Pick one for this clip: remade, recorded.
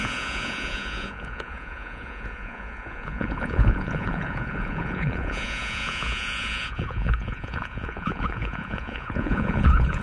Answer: remade